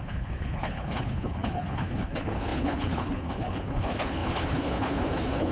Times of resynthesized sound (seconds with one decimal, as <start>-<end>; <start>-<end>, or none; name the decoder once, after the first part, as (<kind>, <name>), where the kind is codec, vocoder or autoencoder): 0.0-5.5 (codec, HILCodec)